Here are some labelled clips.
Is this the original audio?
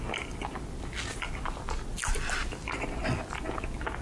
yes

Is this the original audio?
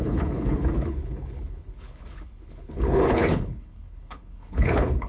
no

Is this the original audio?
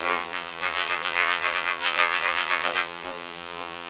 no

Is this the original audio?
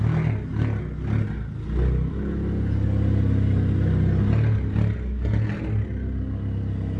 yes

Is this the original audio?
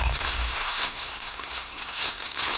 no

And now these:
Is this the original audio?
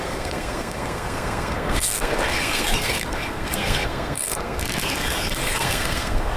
no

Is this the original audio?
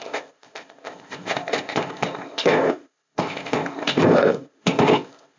no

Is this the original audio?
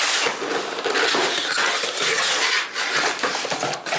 yes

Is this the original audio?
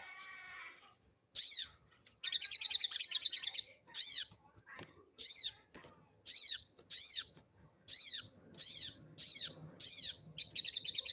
no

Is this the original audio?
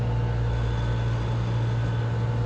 yes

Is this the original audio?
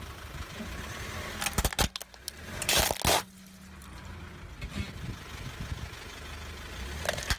yes